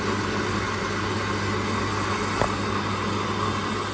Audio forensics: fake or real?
real